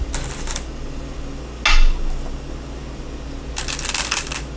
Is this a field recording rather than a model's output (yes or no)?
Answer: yes